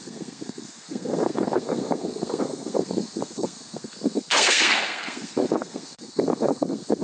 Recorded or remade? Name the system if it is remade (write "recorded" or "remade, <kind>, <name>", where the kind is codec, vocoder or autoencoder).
remade, codec, SNAC